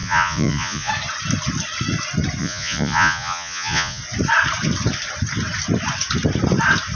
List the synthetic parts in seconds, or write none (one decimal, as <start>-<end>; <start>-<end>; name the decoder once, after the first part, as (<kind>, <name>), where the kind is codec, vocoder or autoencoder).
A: 0.0-0.9 (vocoder, Vocos); 2.4-4.0